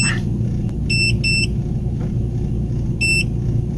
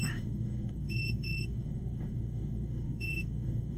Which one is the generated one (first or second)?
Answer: second